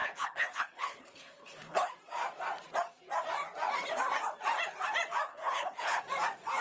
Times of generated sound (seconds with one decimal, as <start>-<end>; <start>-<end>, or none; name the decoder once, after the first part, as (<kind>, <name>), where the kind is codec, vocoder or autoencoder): 0.0-1.9 (codec, HILCodec); 5.3-6.0